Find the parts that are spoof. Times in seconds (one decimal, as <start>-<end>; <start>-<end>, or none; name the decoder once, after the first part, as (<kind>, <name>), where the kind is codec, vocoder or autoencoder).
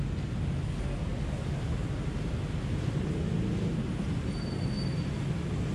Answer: none